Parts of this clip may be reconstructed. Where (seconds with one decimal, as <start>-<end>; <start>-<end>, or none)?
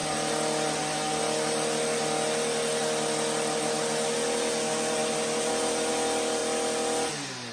none